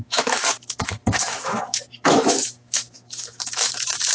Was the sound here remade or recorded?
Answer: remade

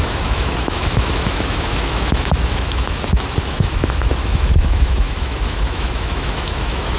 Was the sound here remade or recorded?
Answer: remade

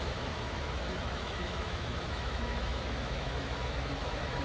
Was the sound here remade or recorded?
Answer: remade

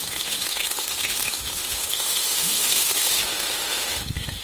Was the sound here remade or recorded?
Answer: remade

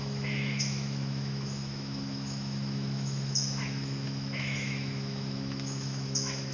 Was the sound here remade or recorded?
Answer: remade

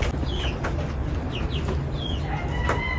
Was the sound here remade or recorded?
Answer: recorded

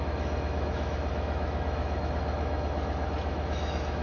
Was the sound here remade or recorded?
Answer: remade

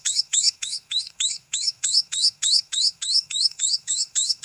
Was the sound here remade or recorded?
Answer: remade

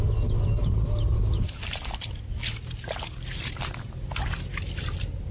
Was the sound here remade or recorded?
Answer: recorded